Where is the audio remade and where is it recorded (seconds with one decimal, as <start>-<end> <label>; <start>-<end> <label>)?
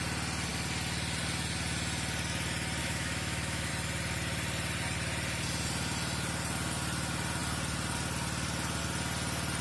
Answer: 0.0-2.8 recorded; 2.8-3.7 remade; 3.7-9.6 recorded